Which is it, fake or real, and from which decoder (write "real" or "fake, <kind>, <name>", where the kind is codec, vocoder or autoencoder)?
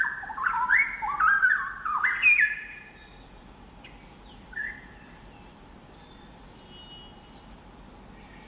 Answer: real